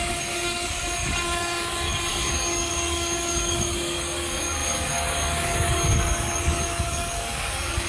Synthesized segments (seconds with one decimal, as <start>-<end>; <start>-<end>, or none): 0.0-7.9

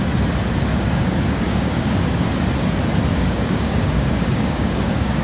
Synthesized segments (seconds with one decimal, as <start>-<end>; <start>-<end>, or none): 0.7-2.3; 3.1-5.2

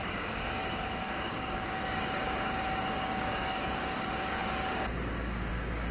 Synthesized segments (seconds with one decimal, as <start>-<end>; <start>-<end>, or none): 0.0-5.9

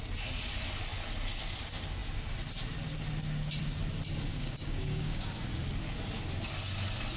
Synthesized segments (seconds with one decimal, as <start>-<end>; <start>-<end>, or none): 4.3-5.3

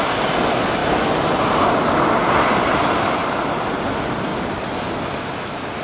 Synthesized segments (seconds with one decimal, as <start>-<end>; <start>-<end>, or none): none

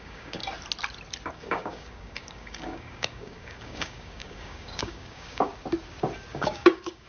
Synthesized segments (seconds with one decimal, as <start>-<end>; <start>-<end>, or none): 0.0-0.4; 1.3-5.5; 6.3-7.1

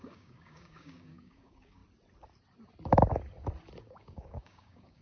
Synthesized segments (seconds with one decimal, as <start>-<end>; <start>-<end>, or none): 0.0-1.8; 3.8-5.0